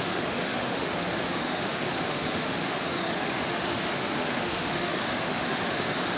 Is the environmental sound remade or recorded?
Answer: remade